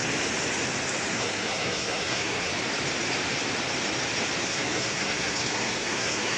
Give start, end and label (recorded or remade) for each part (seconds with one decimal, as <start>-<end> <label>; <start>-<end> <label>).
0.0-1.1 recorded; 1.1-2.5 remade; 2.5-4.4 recorded; 4.4-6.4 remade